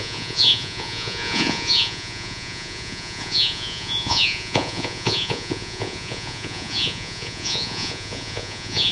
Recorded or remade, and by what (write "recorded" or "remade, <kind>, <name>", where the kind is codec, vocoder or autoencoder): remade, vocoder, Vocos